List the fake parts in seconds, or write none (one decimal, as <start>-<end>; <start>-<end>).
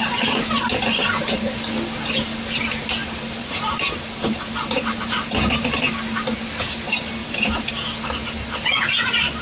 3.4-4.5; 7.2-7.7